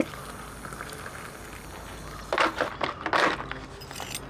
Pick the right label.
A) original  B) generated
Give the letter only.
A